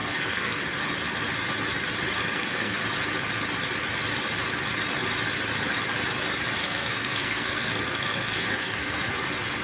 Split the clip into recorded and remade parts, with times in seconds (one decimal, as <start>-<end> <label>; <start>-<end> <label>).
0.0-0.6 remade; 0.6-2.2 recorded; 2.2-2.8 remade; 2.8-6.6 recorded; 6.6-9.1 remade; 9.1-9.6 recorded